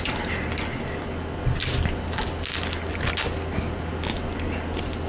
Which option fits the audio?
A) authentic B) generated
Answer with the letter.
A